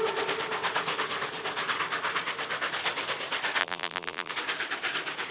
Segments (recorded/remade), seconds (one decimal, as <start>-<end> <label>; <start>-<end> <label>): 0.0-3.6 recorded; 3.6-4.3 remade; 4.3-5.3 recorded